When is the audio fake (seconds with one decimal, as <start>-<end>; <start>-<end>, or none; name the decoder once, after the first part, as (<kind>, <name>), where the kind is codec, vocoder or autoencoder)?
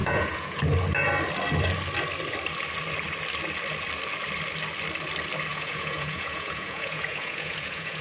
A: 0.0-0.6 (vocoder, Vocos); 5.5-8.0